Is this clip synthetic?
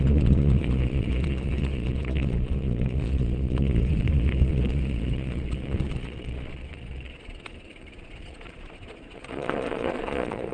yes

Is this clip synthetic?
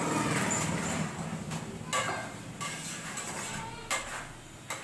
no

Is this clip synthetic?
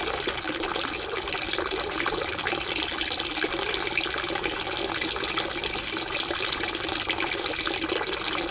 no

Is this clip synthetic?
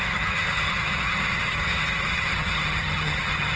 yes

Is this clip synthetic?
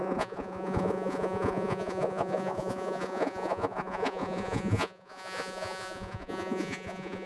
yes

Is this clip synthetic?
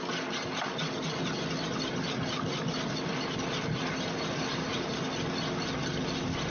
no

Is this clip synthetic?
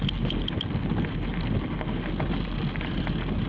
no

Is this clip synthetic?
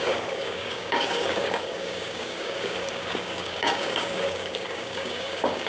yes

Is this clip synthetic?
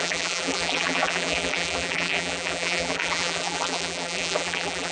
yes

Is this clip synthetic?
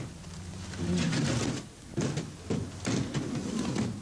no